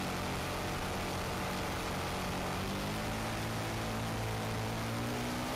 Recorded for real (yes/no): yes